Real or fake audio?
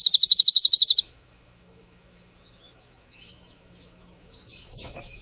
fake